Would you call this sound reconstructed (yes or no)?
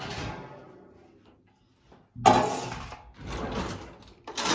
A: no